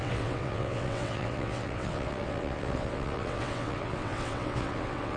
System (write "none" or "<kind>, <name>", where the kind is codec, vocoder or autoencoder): vocoder, WaveNeXt